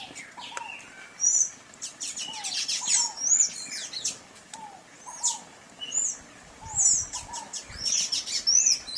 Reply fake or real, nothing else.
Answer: real